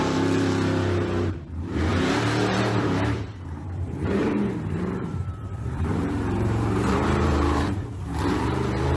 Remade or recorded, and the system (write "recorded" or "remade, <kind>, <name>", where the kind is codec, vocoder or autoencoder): remade, vocoder, BigVGAN v2